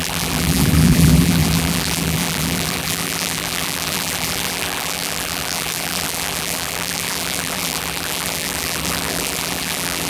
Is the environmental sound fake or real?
fake